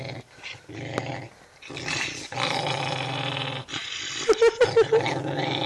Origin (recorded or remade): recorded